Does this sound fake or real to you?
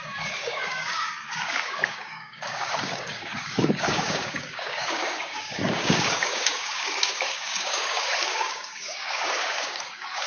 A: fake